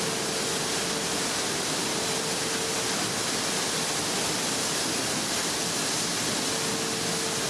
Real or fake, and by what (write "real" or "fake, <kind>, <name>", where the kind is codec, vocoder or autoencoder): real